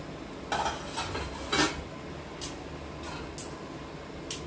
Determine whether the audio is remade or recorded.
recorded